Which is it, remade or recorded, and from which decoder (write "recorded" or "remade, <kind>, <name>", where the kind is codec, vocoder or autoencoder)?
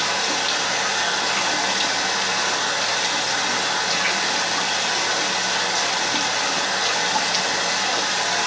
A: recorded